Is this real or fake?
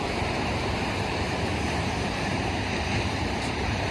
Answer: fake